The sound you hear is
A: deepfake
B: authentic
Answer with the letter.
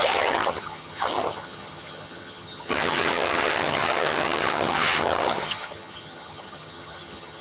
A